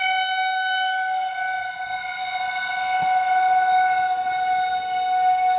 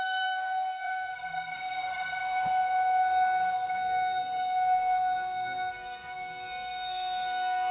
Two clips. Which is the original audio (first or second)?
first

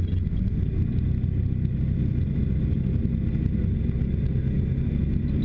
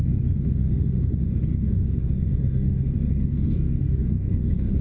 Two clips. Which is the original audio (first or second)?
first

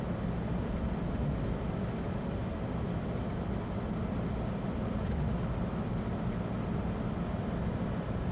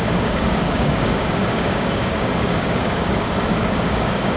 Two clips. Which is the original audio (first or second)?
first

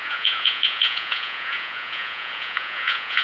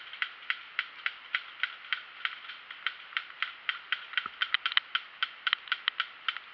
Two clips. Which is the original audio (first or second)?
second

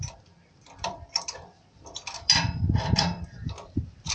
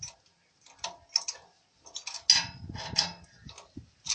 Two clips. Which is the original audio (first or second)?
second